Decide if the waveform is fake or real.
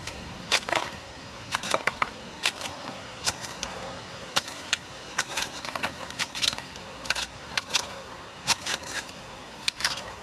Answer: fake